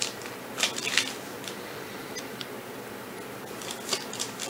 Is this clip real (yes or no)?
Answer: yes